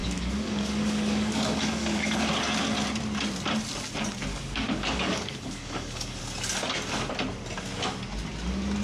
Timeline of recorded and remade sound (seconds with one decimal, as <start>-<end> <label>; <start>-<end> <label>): 0.0-2.3 remade; 2.3-4.3 recorded; 4.3-6.2 remade; 6.2-8.8 recorded